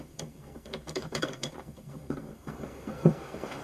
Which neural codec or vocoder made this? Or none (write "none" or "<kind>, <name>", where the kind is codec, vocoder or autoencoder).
codec, SNAC